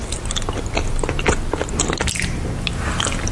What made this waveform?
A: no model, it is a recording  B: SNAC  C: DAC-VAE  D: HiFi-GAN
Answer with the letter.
A